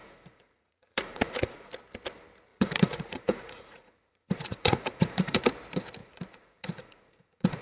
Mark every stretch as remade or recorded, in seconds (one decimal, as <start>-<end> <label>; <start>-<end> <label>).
0.0-1.7 remade; 1.7-2.5 recorded; 2.5-5.4 remade; 5.4-6.0 recorded; 6.0-7.6 remade